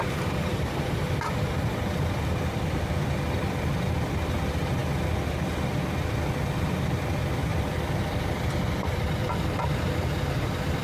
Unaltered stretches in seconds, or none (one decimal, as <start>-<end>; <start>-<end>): 0.0-7.5; 9.5-10.8

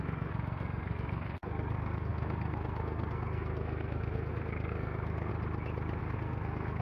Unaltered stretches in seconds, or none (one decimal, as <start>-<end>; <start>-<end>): 5.3-6.0

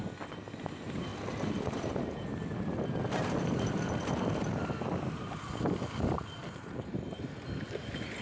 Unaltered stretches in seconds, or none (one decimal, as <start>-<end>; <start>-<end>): 0.0-8.2

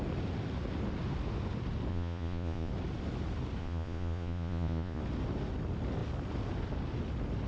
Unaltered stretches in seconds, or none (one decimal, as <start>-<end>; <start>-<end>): 0.0-1.9; 2.7-3.6; 5.0-7.5

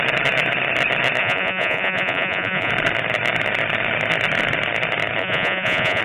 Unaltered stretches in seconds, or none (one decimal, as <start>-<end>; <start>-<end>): 0.0-1.2; 2.7-5.2

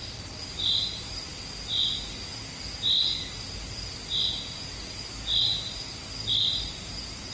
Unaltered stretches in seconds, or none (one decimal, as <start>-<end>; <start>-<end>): 1.0-7.3

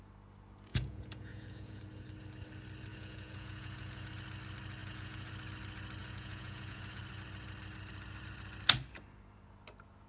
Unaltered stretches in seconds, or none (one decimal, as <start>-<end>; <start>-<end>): 0.0-0.7; 1.8-2.9; 4.1-4.8; 5.3-6.0; 7.0-10.1

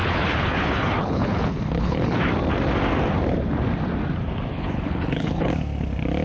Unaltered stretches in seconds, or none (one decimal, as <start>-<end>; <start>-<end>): 2.2-4.5; 5.5-6.2